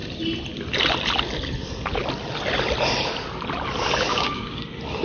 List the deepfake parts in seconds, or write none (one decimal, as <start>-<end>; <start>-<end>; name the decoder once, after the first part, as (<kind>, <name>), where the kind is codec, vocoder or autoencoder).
4.1-4.6 (codec, DAC)